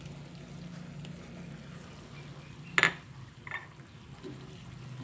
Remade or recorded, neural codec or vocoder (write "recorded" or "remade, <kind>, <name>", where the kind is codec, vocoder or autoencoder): recorded